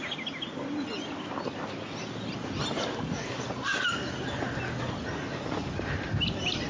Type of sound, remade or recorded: recorded